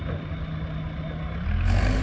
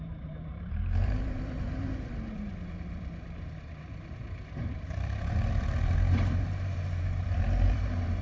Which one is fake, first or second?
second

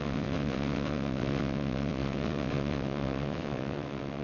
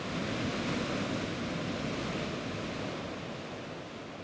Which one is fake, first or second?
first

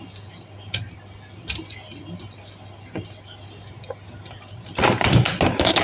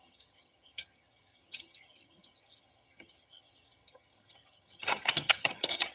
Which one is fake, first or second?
second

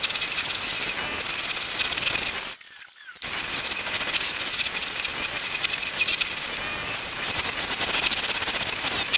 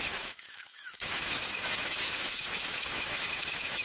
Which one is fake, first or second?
second